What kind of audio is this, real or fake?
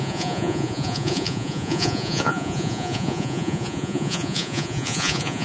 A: fake